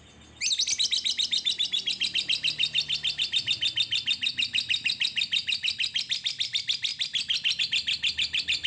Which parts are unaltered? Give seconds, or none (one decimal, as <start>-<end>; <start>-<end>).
0.0-8.7